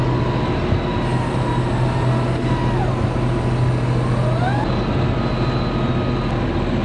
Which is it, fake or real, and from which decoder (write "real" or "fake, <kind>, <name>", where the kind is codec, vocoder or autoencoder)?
real